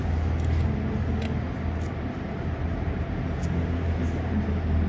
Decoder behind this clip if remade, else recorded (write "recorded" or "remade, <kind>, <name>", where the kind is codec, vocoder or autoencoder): recorded